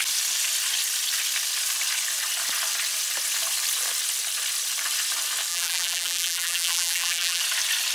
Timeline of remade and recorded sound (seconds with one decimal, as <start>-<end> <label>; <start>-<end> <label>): 0.0-5.5 recorded; 5.5-7.4 remade; 7.4-7.9 recorded